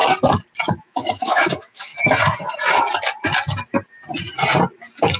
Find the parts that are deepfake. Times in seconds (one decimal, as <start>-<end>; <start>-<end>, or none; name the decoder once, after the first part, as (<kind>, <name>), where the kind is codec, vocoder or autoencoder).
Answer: 0.8-1.9 (autoencoder, DAC-VAE)